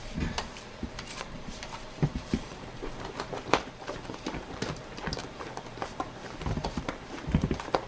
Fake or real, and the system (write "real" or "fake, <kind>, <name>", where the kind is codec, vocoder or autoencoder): fake, vocoder, BigVGAN v2